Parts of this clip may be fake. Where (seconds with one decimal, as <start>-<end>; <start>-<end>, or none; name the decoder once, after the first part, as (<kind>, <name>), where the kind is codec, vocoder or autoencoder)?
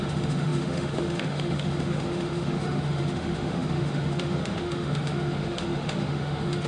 0.0-6.7 (autoencoder, DAC-VAE)